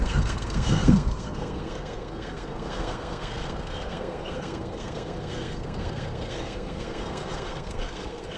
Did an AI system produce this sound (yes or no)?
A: yes